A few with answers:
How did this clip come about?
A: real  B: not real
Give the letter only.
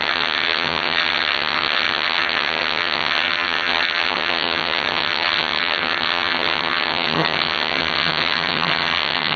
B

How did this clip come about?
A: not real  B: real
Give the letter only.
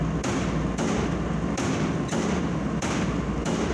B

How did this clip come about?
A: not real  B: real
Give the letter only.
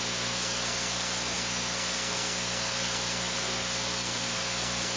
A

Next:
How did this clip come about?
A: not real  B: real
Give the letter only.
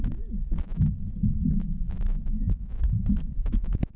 B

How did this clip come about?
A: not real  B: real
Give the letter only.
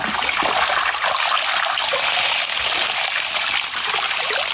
B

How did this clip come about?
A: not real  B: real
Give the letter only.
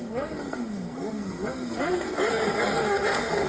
A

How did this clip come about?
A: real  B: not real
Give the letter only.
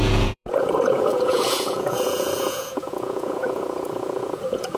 B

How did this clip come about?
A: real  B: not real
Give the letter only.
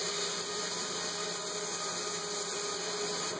A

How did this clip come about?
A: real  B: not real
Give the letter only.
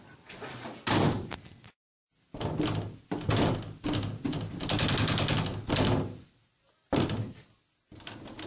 A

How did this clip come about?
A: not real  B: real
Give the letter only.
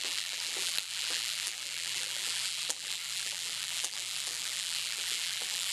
A